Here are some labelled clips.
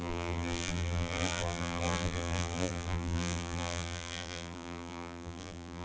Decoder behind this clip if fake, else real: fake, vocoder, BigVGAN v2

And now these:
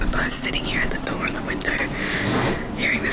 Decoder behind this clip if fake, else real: real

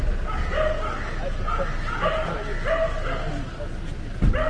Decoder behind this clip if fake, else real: real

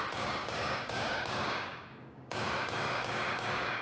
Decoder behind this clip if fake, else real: fake, codec, DAC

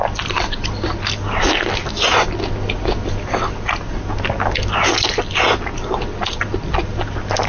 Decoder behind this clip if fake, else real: real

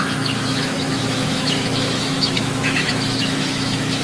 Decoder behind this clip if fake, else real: fake, autoencoder, DAC-VAE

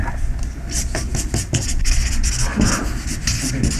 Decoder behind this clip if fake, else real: real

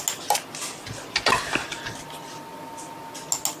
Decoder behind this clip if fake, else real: real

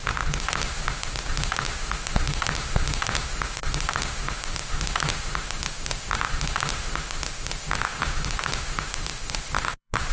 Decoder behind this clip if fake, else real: fake, autoencoder, DAC-VAE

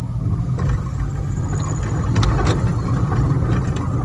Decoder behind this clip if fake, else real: real